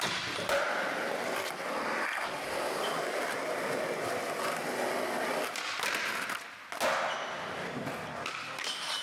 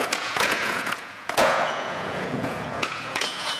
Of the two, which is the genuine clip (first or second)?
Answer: first